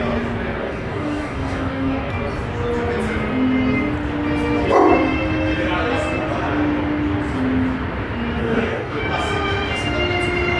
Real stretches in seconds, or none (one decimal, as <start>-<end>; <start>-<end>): 0.0-0.6; 2.1-8.4; 9.0-10.6